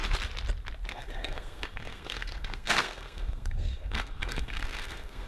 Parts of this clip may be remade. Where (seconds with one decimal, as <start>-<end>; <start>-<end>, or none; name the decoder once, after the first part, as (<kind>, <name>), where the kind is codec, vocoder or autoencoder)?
0.9-5.3 (codec, SNAC)